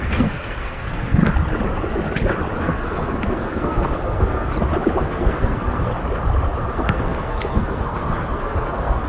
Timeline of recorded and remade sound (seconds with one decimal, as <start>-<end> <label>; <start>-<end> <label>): 0.0-1.2 remade; 1.2-2.6 recorded; 2.6-4.5 remade; 4.5-5.0 recorded; 5.0-5.9 remade; 5.9-6.6 recorded; 6.6-9.1 remade